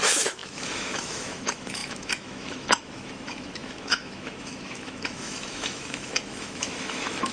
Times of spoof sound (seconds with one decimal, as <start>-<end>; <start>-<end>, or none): 0.0-7.3